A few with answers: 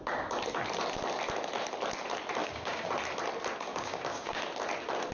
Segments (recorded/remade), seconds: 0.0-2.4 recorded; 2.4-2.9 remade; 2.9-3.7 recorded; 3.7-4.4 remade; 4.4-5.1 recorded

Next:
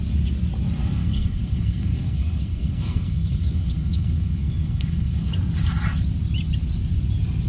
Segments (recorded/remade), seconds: 0.0-0.8 recorded; 0.8-5.3 remade; 5.3-7.5 recorded

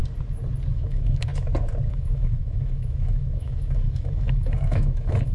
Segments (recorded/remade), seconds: 0.0-0.7 recorded; 0.7-1.3 remade; 1.3-1.9 recorded; 1.9-5.3 remade

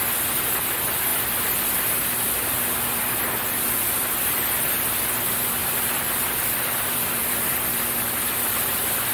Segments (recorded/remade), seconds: 0.0-5.6 recorded; 5.6-6.8 remade; 6.8-9.1 recorded